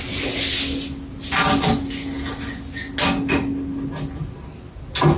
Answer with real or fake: real